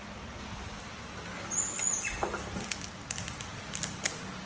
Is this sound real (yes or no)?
yes